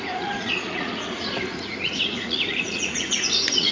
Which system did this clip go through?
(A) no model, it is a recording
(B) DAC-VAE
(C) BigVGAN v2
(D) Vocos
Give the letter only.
D